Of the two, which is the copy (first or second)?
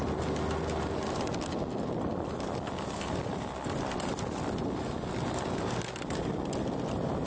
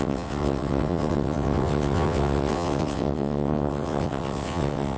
second